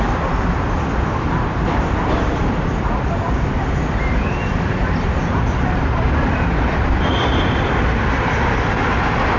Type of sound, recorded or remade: remade